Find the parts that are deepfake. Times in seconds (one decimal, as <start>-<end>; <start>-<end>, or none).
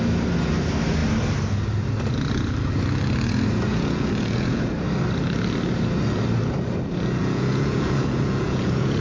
3.7-4.7; 7.2-9.0